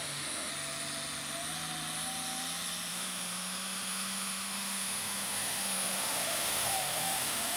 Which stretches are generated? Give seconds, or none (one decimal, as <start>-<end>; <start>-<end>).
0.0-0.5; 2.9-7.6